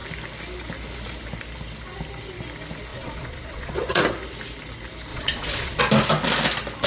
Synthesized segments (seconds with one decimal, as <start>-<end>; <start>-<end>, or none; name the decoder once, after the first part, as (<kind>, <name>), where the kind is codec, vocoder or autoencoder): 2.9-4.0 (vocoder, Vocos); 5.1-5.8